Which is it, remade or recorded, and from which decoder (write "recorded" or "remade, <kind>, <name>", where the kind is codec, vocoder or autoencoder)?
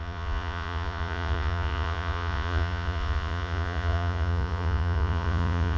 remade, vocoder, Vocos